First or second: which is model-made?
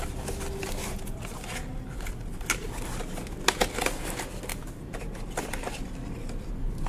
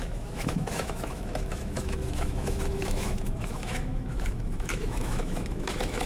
second